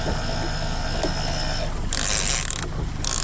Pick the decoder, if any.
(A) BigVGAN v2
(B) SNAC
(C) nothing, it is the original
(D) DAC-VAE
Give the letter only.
C